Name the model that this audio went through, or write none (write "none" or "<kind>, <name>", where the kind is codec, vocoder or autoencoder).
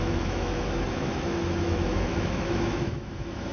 autoencoder, DAC-VAE